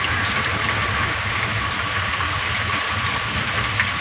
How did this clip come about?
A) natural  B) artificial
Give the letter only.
A